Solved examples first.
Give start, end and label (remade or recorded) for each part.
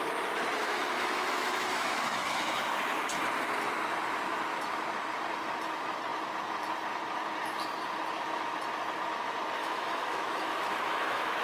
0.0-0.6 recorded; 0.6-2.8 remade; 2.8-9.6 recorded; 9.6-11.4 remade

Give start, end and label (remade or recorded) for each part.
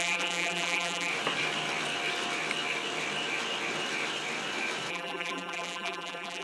0.0-1.1 remade; 1.1-4.9 recorded; 4.9-6.4 remade